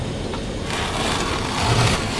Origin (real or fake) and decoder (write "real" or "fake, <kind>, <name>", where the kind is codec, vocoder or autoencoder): real